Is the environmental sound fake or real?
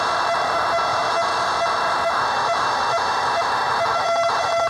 fake